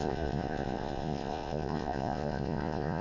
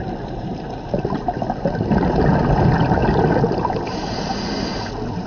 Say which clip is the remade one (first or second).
first